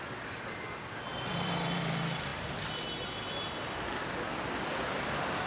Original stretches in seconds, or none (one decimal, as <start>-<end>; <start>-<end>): 0.0-1.1; 1.8-5.5